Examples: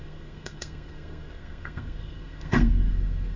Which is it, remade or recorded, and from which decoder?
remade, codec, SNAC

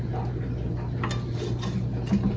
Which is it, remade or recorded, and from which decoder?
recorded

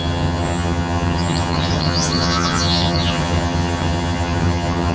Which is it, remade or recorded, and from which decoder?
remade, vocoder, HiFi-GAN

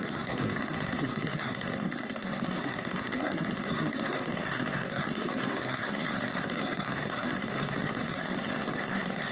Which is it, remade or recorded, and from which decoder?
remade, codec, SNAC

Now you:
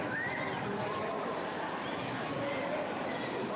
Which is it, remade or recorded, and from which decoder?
recorded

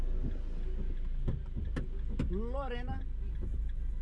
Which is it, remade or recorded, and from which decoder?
recorded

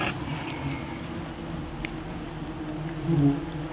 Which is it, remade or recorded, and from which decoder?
recorded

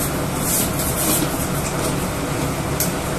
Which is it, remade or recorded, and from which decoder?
recorded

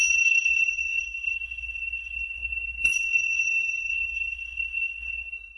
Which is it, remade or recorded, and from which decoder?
remade, codec, SNAC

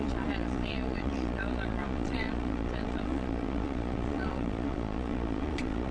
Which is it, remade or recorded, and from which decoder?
remade, vocoder, Vocos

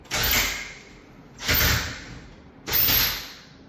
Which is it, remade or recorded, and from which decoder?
recorded